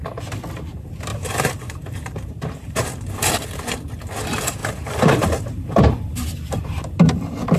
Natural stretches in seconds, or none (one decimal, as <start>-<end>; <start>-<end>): 0.0-1.1; 3.3-4.6; 7.0-7.6